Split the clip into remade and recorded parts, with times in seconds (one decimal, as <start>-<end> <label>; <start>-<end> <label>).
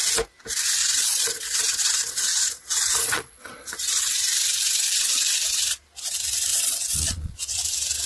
0.0-0.8 recorded; 0.8-4.0 remade; 4.0-6.5 recorded; 6.5-7.6 remade; 7.6-8.1 recorded